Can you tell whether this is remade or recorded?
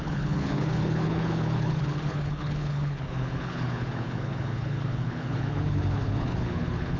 remade